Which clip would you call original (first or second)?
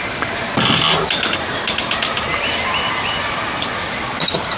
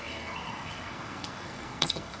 first